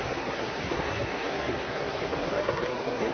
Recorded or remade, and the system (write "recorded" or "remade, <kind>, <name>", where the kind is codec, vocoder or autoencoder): remade, codec, SNAC